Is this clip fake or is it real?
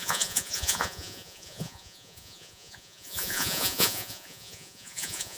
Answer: fake